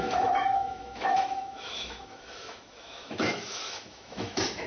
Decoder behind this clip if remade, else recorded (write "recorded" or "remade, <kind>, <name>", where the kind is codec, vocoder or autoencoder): remade, autoencoder, DAC-VAE